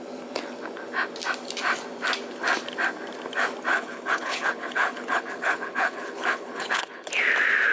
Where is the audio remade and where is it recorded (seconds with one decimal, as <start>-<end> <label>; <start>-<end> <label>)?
0.0-3.7 recorded; 3.7-7.1 remade; 7.1-7.7 recorded